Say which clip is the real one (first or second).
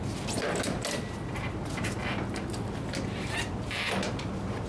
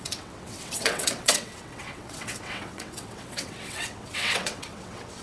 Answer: first